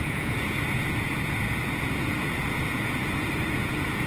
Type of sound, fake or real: fake